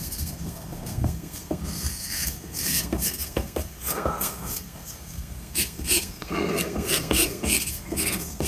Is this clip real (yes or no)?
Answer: no